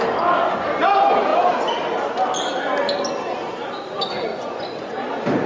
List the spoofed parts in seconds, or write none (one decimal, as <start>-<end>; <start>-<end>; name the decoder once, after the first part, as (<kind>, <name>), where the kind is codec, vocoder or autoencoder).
4.3-4.9 (vocoder, Vocos)